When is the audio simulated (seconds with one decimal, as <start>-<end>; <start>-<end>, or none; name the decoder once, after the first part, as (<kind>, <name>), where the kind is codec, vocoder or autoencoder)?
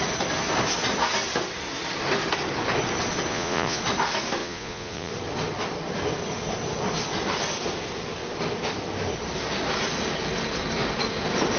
3.3-3.8 (vocoder, Vocos); 4.4-5.1